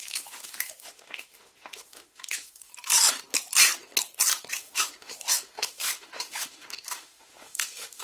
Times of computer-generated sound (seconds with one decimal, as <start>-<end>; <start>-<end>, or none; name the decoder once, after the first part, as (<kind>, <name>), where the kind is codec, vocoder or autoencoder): 0.0-2.7 (autoencoder, DAC-VAE); 4.5-8.0